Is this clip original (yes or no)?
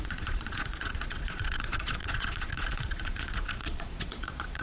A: no